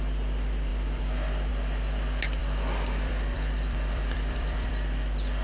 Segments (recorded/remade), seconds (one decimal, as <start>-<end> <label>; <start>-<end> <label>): 0.0-0.7 recorded; 0.7-1.5 remade; 1.5-2.4 recorded; 2.4-4.7 remade; 4.7-5.4 recorded